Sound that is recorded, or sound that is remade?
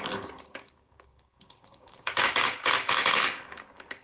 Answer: remade